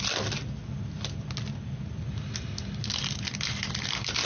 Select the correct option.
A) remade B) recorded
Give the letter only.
B